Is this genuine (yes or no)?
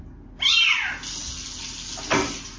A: yes